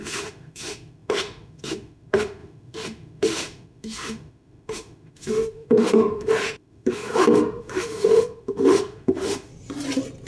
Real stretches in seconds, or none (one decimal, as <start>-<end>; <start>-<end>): 9.5-10.3